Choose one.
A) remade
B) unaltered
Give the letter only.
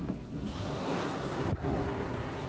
A